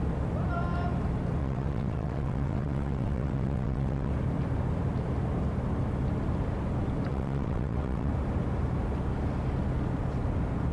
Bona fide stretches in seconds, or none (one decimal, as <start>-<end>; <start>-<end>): 0.0-1.4; 4.1-7.1; 8.1-10.7